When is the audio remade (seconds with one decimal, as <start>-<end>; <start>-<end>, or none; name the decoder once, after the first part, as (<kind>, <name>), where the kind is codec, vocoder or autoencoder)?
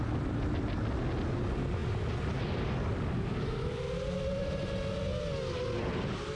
none